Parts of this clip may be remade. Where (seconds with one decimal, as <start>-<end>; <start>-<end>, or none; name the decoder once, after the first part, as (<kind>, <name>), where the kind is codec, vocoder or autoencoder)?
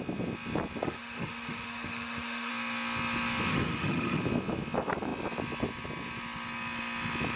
0.8-2.5 (autoencoder, DAC-VAE); 3.5-4.2